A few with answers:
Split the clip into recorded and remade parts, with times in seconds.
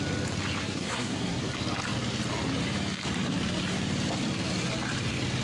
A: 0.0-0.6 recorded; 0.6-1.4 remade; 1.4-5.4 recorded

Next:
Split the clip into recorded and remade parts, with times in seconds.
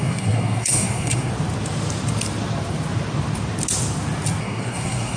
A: 0.0-1.3 remade; 1.3-4.4 recorded; 4.4-5.2 remade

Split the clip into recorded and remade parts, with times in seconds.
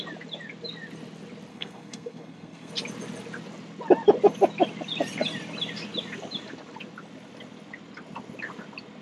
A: 0.0-1.5 recorded; 1.5-2.7 remade; 2.7-9.0 recorded